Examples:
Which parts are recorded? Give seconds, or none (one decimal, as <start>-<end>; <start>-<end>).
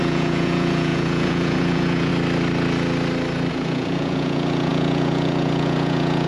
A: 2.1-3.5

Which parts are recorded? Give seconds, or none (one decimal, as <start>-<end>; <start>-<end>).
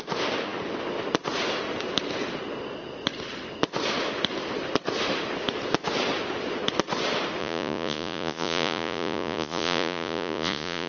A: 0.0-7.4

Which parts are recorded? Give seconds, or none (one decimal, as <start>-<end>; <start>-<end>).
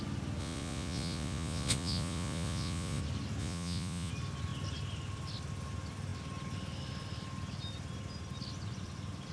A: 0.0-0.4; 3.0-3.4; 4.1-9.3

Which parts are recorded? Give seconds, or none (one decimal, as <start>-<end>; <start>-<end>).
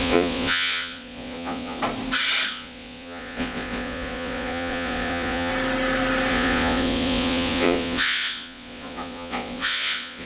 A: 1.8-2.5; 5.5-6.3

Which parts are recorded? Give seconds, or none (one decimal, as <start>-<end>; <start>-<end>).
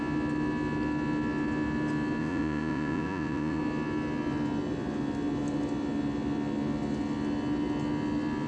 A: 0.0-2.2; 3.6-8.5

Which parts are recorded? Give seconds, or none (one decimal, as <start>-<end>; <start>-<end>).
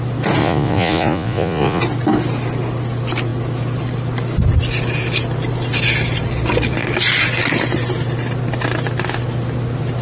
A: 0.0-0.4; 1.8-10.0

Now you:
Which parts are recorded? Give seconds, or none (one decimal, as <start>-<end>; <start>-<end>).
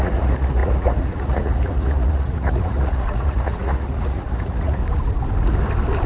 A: 4.8-6.1